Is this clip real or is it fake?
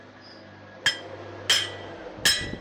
real